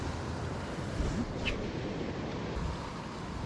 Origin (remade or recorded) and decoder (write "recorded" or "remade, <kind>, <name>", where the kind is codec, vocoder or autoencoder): recorded